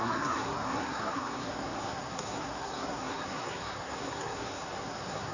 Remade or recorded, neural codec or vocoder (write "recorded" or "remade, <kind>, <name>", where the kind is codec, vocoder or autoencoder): remade, codec, SNAC